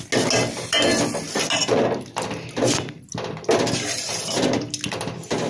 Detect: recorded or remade recorded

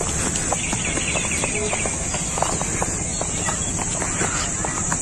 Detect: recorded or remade recorded